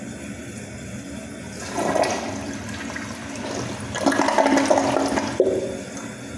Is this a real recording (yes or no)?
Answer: yes